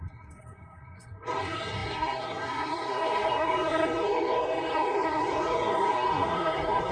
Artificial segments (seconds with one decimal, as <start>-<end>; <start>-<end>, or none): 0.0-6.9